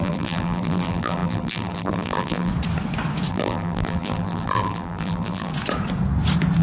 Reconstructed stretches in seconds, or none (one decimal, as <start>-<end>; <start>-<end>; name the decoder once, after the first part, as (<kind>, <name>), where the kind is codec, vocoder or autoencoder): 0.0-2.5 (vocoder, BigVGAN v2); 3.3-5.5